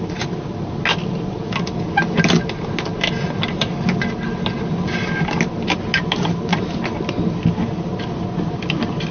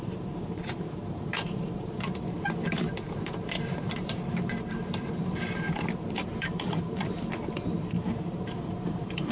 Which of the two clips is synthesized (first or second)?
second